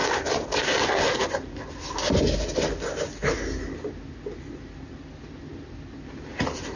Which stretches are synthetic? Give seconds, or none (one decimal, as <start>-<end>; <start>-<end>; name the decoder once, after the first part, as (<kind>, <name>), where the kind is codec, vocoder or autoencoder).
none